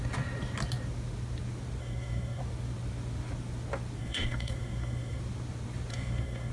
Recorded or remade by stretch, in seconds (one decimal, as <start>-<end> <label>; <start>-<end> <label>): 0.0-1.8 recorded; 1.8-2.4 remade; 2.4-4.0 recorded; 4.0-5.2 remade; 5.2-5.9 recorded; 5.9-6.5 remade